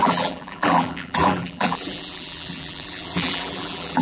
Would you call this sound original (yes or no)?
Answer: no